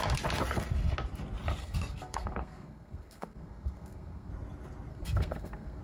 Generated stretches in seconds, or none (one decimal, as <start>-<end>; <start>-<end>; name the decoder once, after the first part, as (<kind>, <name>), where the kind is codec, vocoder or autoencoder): 1.6-4.3 (codec, SNAC); 4.9-5.8